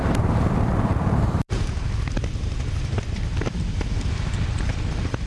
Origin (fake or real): fake